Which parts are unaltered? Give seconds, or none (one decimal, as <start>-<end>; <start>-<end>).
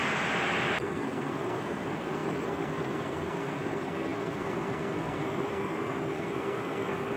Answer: 0.0-0.8